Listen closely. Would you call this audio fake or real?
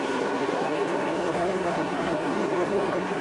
fake